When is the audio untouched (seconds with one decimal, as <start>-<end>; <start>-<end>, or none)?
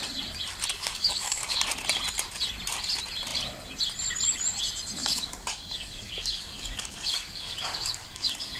0.0-0.7; 1.6-5.0